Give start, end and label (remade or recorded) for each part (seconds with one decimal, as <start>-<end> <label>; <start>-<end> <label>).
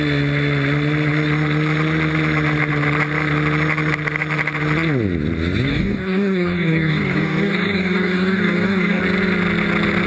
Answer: 0.0-5.7 recorded; 5.7-9.0 remade; 9.0-10.1 recorded